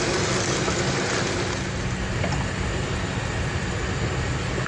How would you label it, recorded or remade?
recorded